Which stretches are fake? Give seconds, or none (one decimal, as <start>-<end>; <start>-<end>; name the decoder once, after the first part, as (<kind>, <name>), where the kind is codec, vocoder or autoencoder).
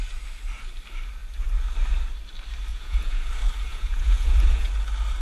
2.7-3.3 (vocoder, Vocos); 3.7-4.7